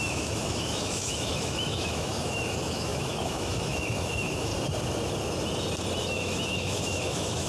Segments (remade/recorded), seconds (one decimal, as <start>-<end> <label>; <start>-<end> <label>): 0.0-4.5 remade; 4.5-6.0 recorded; 6.0-7.5 remade